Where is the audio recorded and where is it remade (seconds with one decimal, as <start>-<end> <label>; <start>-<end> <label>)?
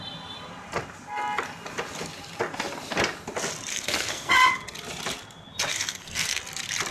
0.0-3.7 recorded; 3.7-4.3 remade; 4.3-5.7 recorded; 5.7-6.4 remade; 6.4-6.9 recorded